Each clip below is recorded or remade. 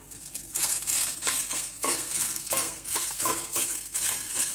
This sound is remade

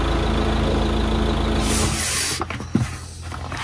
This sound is recorded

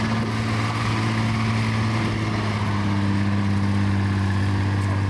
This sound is recorded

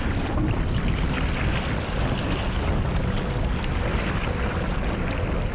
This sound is recorded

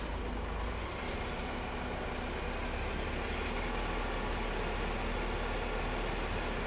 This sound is recorded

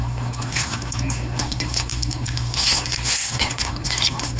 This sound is remade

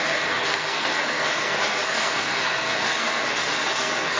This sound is remade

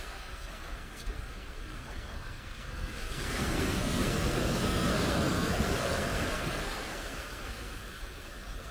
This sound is remade